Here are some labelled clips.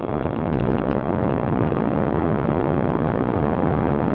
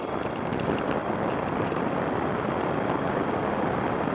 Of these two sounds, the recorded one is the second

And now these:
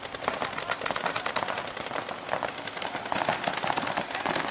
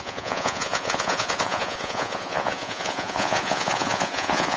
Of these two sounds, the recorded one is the first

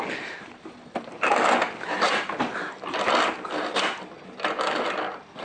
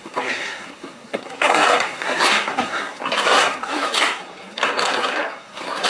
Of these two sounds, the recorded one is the first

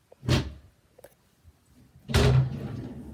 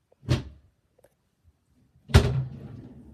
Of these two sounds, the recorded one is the first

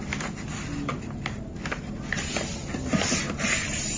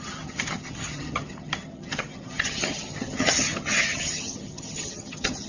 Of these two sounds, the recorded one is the first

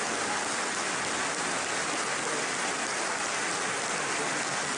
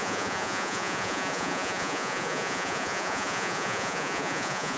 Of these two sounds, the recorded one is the first